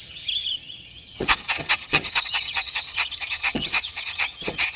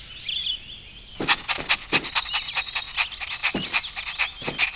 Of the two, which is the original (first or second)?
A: second